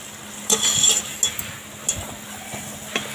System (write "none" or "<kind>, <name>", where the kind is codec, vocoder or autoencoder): none